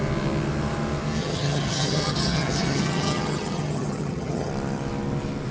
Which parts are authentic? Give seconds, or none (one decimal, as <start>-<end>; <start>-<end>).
0.0-1.2; 4.5-5.5

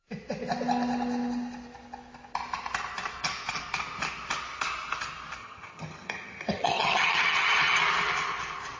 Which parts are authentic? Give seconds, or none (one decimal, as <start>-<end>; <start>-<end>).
0.0-5.4; 7.8-8.8